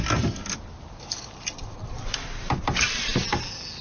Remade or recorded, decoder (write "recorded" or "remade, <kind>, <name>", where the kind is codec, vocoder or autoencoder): recorded